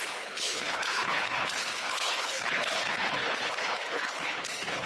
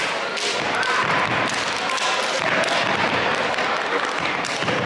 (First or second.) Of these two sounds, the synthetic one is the first